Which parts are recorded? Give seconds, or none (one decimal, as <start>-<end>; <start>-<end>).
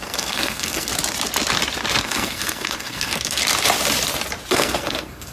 0.9-2.0; 3.4-4.5